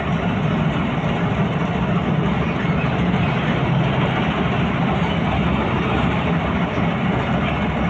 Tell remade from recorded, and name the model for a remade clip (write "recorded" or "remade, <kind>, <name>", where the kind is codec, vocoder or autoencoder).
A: recorded